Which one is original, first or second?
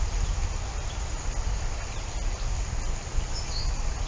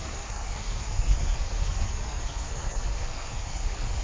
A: first